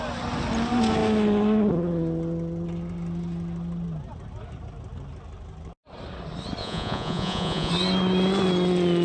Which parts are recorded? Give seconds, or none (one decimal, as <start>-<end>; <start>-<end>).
0.0-6.6; 7.7-9.0

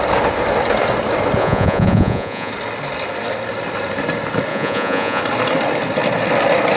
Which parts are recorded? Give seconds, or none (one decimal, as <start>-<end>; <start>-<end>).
0.0-1.4; 2.5-4.5; 5.2-6.8

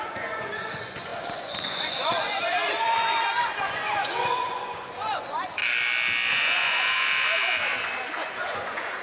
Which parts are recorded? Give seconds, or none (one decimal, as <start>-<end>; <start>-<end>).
5.6-6.3; 7.4-8.0